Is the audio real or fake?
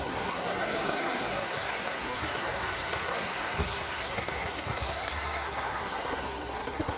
fake